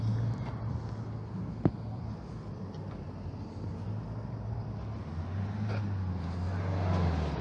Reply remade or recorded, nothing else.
recorded